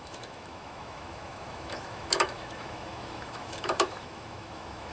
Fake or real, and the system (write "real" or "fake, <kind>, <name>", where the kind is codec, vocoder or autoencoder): fake, autoencoder, DAC-VAE